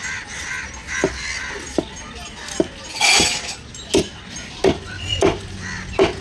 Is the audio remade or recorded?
recorded